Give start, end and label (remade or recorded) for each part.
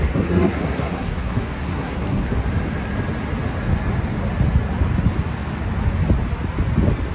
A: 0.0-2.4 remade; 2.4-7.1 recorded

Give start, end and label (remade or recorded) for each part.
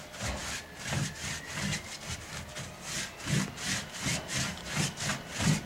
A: 0.0-5.7 recorded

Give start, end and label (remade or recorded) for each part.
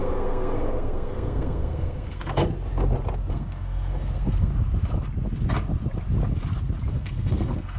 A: 0.0-2.4 remade; 2.4-3.3 recorded; 3.3-4.5 remade; 4.5-6.9 recorded; 6.9-7.8 remade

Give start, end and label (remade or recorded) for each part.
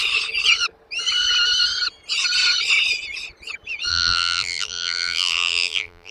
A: 0.0-3.9 recorded; 3.9-6.1 remade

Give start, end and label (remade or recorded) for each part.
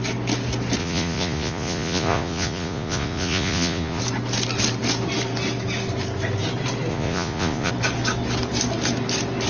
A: 0.0-0.8 recorded; 0.8-4.0 remade; 4.0-6.9 recorded; 6.9-7.7 remade; 7.7-9.5 recorded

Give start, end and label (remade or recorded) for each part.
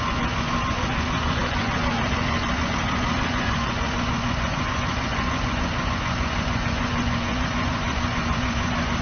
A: 0.0-9.0 remade